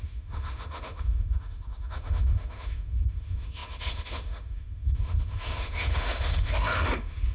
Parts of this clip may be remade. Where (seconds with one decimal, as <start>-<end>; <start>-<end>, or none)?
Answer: 0.0-7.3